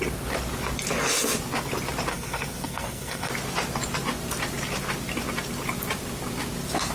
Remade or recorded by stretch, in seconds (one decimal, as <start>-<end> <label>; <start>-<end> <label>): 0.0-2.1 recorded; 2.1-3.3 remade; 3.3-6.9 recorded